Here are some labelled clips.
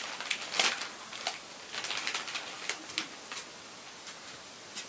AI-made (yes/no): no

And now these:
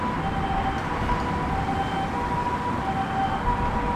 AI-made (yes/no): no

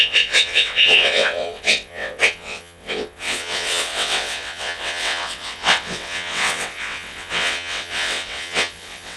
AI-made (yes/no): yes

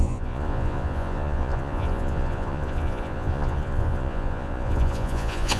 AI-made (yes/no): yes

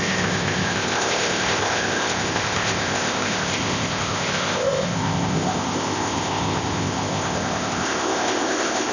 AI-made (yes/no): yes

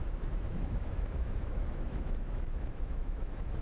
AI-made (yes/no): yes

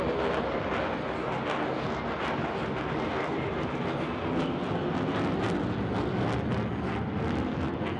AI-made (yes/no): no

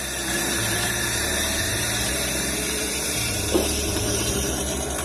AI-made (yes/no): yes